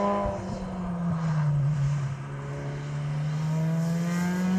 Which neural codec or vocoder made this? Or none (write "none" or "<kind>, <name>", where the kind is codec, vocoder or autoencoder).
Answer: none